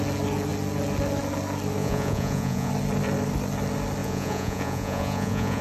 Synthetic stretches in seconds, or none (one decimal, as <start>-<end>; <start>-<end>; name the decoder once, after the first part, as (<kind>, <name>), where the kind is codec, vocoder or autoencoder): 1.8-2.7 (vocoder, Vocos); 4.0-5.6